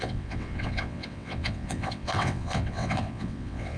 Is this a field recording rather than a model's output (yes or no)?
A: no